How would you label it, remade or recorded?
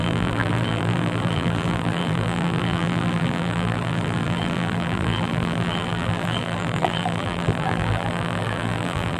remade